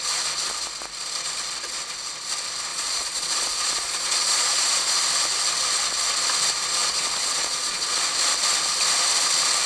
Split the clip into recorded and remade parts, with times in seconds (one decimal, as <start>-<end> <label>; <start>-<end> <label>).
0.0-2.7 recorded; 2.7-5.0 remade; 5.0-6.8 recorded; 6.8-7.8 remade; 7.8-9.7 recorded